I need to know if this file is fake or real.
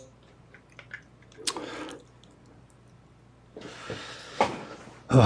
real